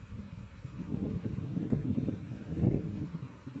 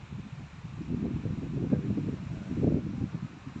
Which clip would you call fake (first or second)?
first